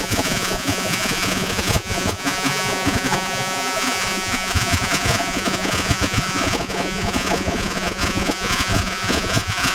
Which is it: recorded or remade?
remade